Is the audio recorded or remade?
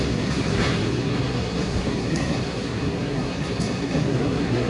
remade